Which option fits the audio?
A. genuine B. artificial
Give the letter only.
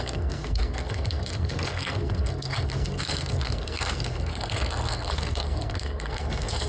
B